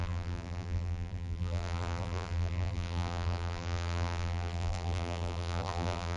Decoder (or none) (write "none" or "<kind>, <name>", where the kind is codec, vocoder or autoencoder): vocoder, BigVGAN v2